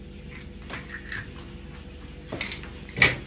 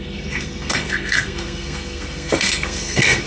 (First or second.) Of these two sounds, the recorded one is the first